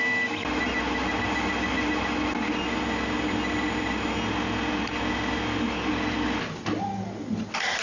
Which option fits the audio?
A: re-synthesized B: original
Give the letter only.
B